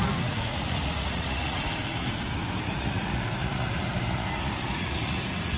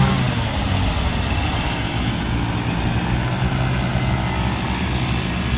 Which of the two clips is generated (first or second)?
first